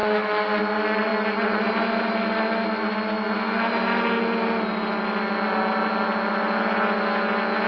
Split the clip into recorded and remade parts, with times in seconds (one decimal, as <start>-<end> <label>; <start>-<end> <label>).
0.0-7.7 recorded